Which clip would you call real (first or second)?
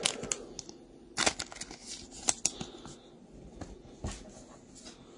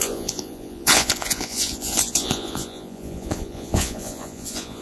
first